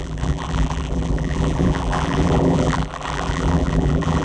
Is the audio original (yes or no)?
no